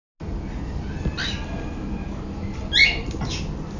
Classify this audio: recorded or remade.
recorded